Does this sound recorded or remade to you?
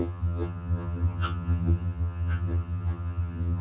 remade